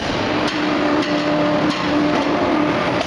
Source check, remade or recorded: recorded